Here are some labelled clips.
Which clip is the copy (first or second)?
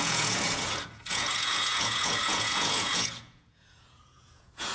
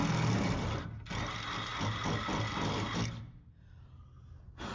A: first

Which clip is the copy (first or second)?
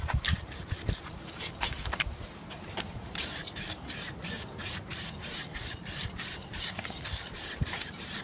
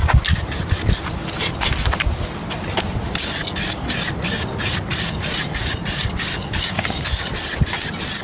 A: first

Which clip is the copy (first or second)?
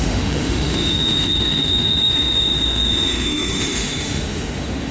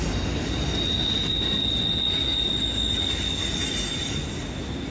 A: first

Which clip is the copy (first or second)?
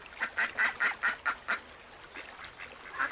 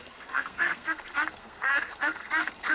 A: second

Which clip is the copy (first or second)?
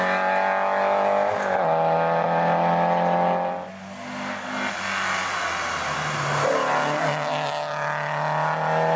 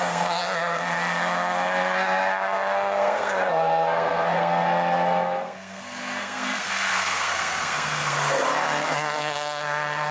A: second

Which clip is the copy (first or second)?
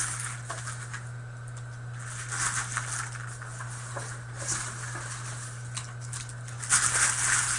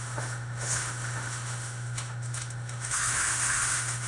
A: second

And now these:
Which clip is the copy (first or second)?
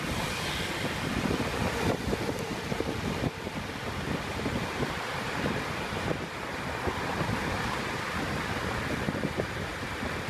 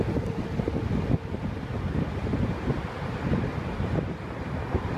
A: first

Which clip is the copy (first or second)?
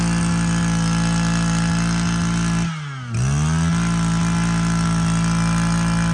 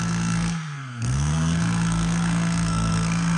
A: second